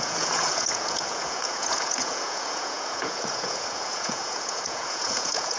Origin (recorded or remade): remade